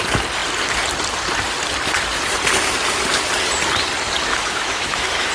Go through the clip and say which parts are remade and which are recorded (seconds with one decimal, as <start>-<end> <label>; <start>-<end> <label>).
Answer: 0.0-4.3 recorded; 4.3-5.3 remade